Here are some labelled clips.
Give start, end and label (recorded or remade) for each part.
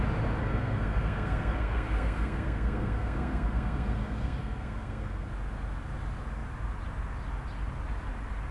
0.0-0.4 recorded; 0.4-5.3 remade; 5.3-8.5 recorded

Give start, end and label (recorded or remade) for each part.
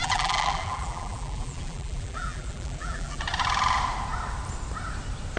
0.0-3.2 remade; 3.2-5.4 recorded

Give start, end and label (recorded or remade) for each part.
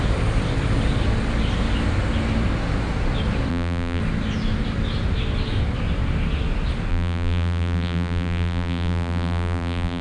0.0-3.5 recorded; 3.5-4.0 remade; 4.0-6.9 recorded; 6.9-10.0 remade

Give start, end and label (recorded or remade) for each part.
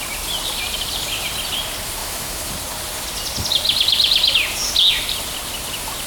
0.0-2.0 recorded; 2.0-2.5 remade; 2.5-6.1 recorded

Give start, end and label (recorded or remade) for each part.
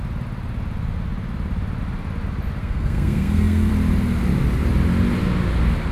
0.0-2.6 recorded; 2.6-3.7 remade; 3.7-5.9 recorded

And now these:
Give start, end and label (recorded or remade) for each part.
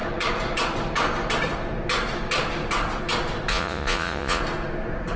0.0-3.5 recorded; 3.5-4.4 remade; 4.4-5.2 recorded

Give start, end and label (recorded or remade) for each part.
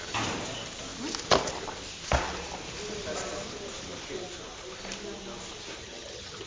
0.0-5.8 recorded; 5.8-6.5 remade